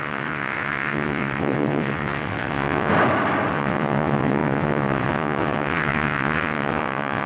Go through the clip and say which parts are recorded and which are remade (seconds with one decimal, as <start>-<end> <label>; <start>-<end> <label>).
0.0-2.9 remade; 2.9-3.5 recorded; 3.5-7.3 remade